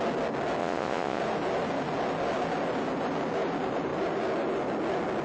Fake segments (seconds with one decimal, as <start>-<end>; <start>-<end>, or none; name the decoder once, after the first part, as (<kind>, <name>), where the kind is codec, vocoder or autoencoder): 0.6-1.2 (vocoder, Vocos)